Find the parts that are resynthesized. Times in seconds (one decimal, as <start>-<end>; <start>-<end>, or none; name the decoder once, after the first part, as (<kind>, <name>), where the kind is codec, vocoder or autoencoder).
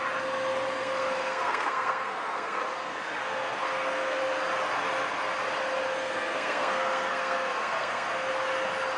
0.8-2.6 (codec, SNAC); 3.2-4.2; 5.9-8.3